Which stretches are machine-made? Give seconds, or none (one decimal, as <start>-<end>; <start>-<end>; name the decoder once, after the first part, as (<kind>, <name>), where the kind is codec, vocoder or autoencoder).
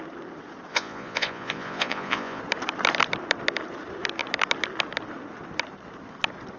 0.7-2.4 (vocoder, Vocos)